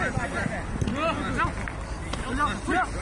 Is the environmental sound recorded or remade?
recorded